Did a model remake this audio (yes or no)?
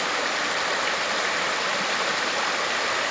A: yes